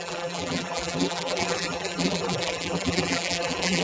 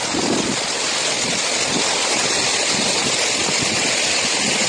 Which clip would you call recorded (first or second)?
second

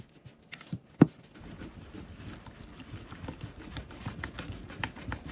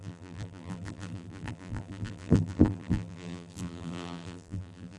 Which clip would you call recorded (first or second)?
first